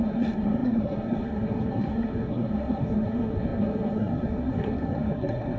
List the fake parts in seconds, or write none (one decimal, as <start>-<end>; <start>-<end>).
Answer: 0.0-5.6